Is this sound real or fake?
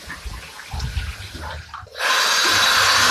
real